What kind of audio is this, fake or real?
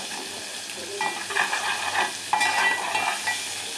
real